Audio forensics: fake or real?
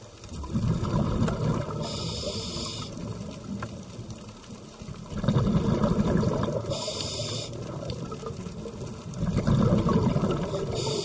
real